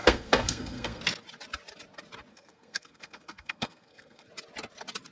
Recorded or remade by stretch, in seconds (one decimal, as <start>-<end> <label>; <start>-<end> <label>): 0.0-1.0 remade; 1.0-2.3 recorded; 2.3-4.3 remade; 4.3-5.1 recorded